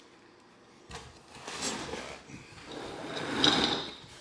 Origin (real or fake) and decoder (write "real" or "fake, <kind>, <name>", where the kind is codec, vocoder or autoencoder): real